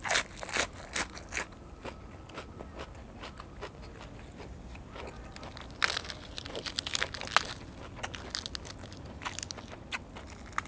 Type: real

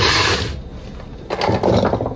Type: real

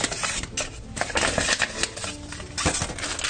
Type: real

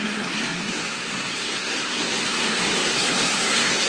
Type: fake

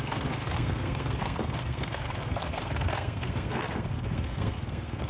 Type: fake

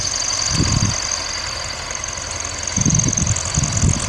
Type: real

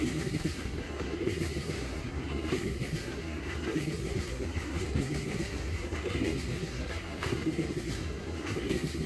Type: fake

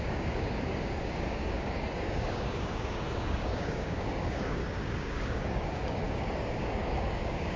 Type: fake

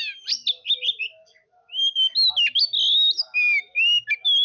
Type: real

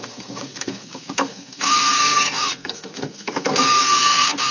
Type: fake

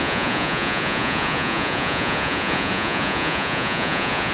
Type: fake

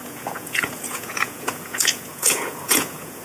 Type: fake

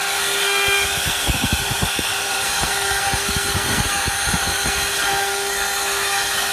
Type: fake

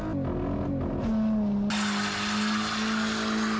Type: real